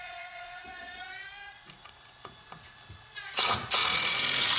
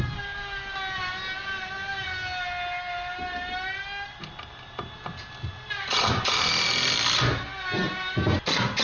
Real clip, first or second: second